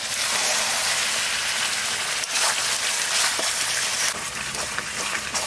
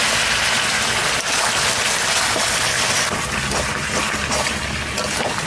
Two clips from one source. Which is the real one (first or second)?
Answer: second